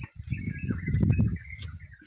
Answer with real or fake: real